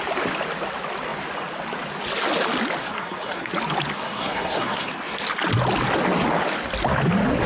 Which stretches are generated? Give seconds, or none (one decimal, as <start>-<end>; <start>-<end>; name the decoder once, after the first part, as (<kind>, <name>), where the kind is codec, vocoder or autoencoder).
2.8-3.5 (codec, SNAC); 4.0-4.9